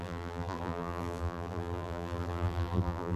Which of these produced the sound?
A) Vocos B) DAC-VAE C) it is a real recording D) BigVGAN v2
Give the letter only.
D